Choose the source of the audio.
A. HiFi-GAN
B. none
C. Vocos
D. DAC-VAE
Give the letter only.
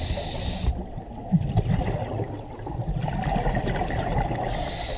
B